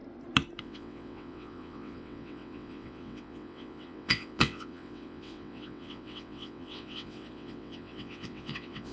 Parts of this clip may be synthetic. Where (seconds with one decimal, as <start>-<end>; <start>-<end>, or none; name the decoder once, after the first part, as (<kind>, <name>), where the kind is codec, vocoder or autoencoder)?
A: 0.6-8.9 (vocoder, WaveNeXt)